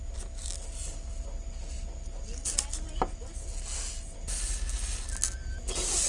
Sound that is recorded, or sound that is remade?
recorded